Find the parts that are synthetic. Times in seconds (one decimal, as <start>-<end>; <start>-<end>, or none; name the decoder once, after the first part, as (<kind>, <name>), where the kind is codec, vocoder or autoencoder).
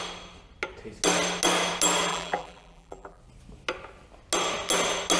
2.1-3.2 (vocoder, BigVGAN v2)